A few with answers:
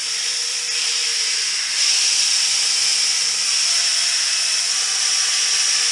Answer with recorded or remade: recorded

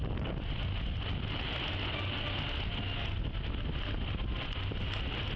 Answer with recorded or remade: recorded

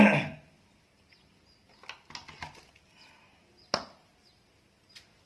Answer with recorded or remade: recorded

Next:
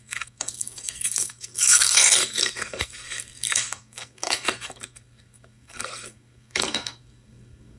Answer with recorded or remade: remade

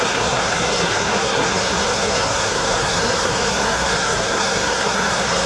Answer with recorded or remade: remade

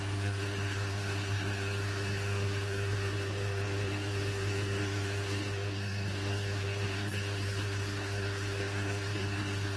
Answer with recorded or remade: remade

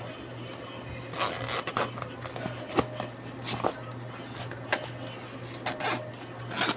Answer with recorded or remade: recorded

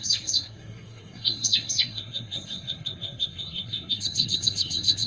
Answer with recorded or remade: remade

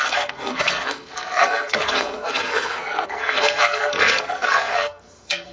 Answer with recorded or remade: remade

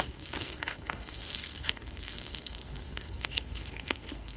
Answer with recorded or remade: remade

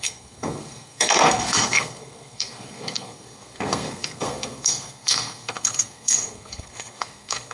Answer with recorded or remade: remade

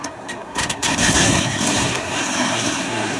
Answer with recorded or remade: remade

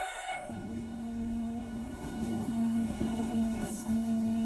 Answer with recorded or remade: remade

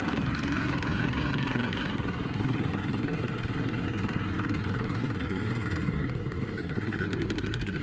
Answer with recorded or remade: remade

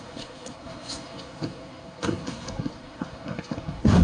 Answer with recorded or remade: remade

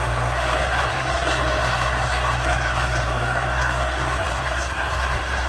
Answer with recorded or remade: remade